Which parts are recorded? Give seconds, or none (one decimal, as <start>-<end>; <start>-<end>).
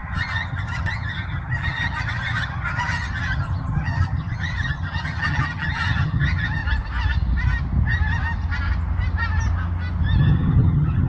6.6-10.2